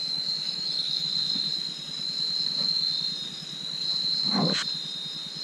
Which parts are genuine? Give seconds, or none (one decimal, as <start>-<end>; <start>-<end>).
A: 1.1-5.4